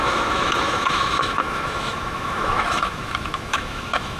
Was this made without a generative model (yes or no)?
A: no